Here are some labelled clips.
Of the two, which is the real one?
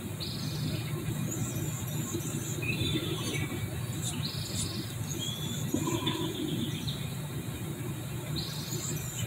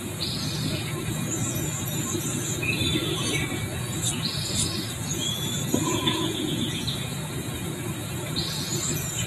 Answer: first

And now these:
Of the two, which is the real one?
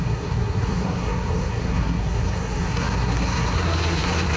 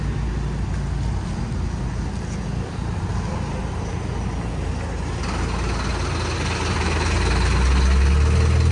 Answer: second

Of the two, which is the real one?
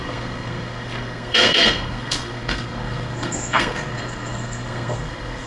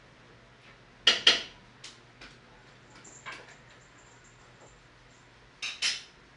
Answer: second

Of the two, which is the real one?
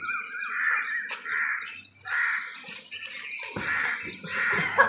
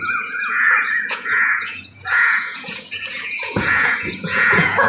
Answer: first